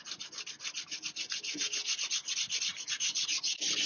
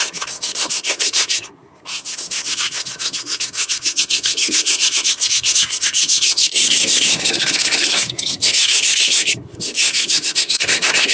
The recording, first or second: first